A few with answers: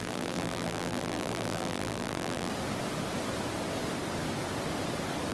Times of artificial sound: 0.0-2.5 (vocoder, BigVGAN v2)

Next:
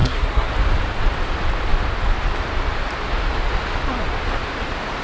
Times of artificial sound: 0.0-0.5 (codec, SNAC)